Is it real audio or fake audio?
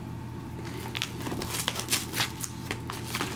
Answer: real